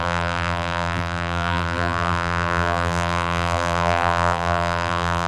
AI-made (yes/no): yes